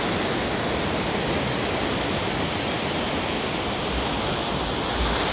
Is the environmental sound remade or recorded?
recorded